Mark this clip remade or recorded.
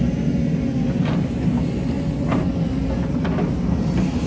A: recorded